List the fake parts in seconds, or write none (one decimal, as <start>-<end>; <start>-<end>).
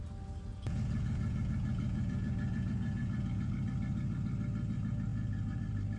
0.5-3.5; 5.1-5.6